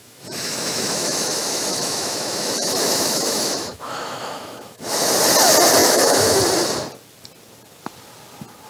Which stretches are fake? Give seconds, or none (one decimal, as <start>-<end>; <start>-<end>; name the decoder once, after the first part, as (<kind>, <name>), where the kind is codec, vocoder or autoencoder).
0.0-5.1 (autoencoder, DAC-VAE); 5.8-6.4